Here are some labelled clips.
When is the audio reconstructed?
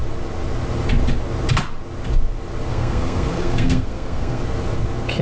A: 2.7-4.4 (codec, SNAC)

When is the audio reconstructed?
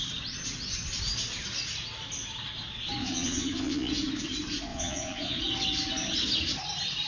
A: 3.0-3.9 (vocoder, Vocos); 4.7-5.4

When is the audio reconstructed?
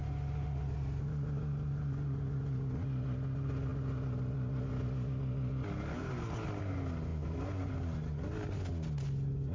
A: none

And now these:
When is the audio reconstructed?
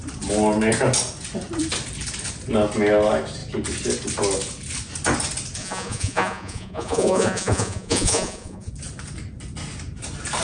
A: 5.6-8.7 (vocoder, Vocos)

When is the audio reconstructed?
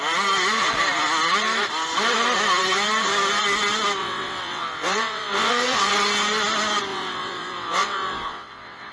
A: 4.0-5.9 (vocoder, WaveNeXt); 6.9-8.9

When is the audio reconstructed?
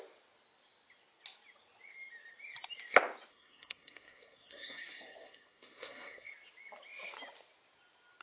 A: 3.3-6.3 (codec, SNAC)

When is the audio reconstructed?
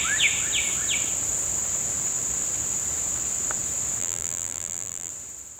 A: 4.0-5.1 (vocoder, BigVGAN v2)